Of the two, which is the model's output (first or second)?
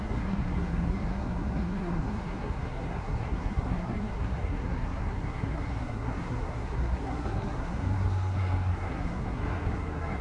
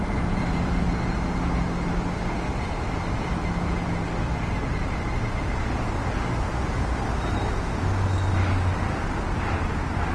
first